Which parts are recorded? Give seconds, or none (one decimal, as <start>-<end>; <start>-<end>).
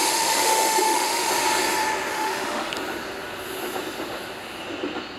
1.3-2.1; 2.7-5.2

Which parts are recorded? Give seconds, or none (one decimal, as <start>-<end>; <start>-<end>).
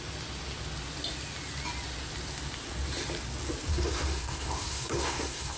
0.0-3.7